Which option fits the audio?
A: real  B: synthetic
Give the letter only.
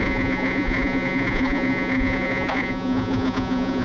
B